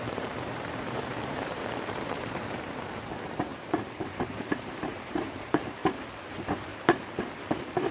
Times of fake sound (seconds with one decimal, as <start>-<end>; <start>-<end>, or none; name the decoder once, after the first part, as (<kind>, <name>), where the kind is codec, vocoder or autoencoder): 0.0-5.8 (vocoder, BigVGAN v2); 6.3-6.7